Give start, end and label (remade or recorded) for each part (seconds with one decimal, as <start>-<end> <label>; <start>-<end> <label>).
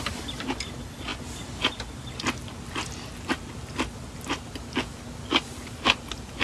0.0-6.4 recorded